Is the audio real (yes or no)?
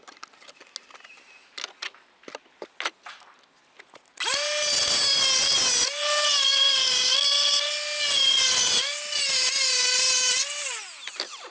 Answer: yes